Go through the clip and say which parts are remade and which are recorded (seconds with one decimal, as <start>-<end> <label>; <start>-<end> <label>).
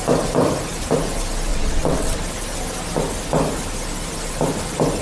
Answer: 0.0-1.5 recorded; 1.5-2.2 remade; 2.2-5.0 recorded